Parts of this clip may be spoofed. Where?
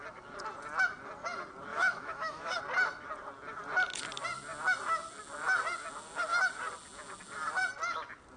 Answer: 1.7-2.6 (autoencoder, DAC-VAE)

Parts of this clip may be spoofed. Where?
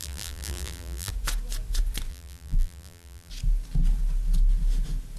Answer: 0.0-1.1 (vocoder, BigVGAN v2); 2.1-3.3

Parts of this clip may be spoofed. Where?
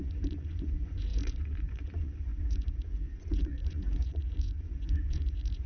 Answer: 0.0-5.7 (vocoder, Vocos)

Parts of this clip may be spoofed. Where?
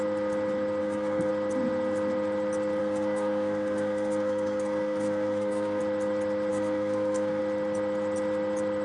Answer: 0.8-1.3 (codec, SNAC); 2.8-5.8; 6.5-7.4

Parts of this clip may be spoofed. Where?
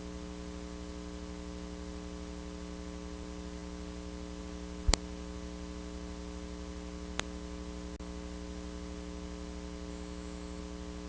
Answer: 9.9-10.6 (autoencoder, DAC-VAE)